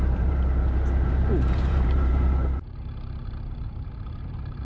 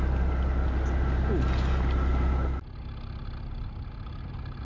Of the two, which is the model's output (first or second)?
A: first